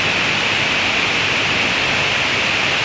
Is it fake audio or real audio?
real